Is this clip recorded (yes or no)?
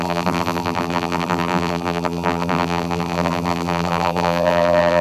no